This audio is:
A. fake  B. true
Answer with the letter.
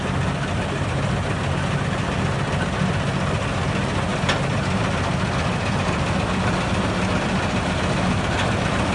B